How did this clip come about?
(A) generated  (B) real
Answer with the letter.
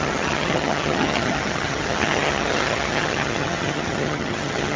A